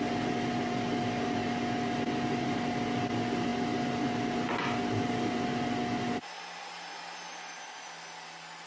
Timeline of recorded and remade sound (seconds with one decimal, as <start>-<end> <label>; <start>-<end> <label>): 0.0-8.7 recorded